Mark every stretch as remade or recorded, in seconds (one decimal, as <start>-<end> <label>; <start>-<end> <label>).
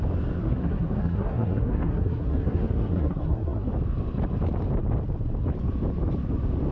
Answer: 0.0-0.4 recorded; 0.4-3.7 remade; 3.7-6.7 recorded